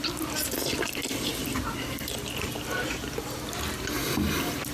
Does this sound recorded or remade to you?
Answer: recorded